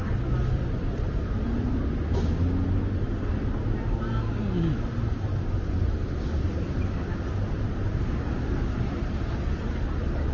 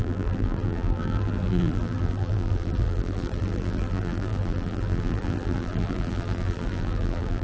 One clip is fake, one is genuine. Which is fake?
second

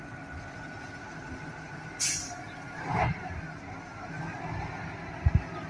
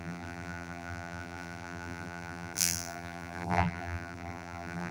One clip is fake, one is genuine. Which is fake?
second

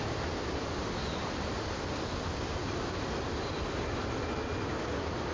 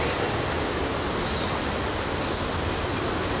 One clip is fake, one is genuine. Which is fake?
first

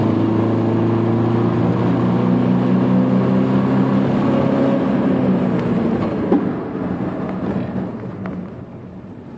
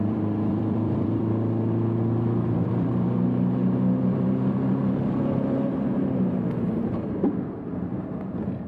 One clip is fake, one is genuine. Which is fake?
second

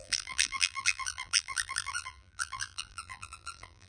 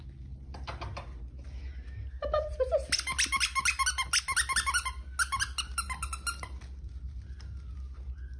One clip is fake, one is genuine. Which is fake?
first